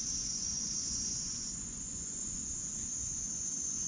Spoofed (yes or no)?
yes